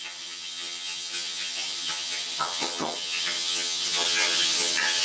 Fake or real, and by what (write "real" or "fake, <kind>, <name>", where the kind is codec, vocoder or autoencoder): fake, vocoder, HiFi-GAN